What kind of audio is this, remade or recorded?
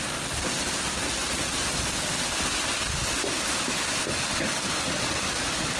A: recorded